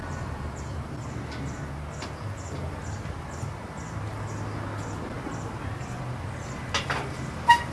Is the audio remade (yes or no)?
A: no